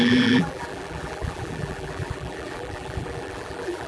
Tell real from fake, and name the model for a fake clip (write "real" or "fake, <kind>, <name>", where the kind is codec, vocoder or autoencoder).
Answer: fake, vocoder, BigVGAN v2